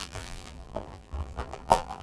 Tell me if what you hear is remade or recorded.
remade